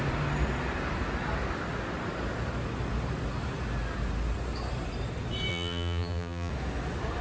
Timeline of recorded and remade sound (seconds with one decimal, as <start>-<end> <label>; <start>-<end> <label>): 0.0-5.5 recorded; 5.5-6.5 remade; 6.5-7.2 recorded